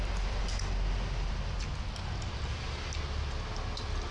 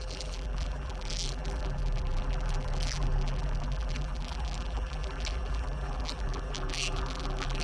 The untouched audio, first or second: first